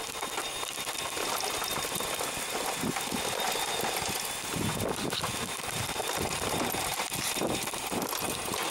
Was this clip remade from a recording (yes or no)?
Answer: no